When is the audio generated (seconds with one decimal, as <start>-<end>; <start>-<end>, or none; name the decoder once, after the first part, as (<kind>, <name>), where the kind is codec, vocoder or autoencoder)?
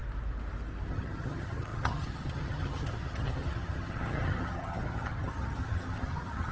0.9-6.5 (vocoder, HiFi-GAN)